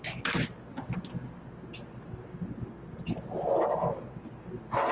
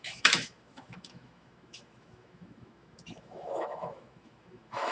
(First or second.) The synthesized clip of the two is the second